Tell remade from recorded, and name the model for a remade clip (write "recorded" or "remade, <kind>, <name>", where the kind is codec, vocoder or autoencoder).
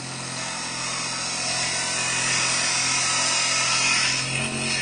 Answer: recorded